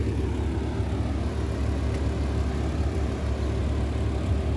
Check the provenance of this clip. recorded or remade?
recorded